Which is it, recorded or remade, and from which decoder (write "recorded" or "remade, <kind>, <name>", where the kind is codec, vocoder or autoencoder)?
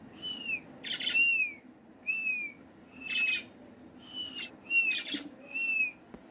recorded